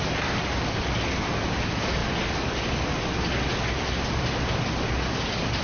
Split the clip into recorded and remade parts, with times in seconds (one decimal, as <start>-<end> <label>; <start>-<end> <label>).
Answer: 0.0-5.6 recorded